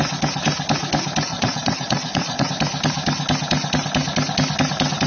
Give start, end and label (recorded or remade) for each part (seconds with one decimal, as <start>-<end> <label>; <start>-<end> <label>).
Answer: 0.0-1.3 recorded; 1.3-2.5 remade; 2.5-5.1 recorded